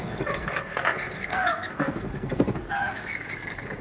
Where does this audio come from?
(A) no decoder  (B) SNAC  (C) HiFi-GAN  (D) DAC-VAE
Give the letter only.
B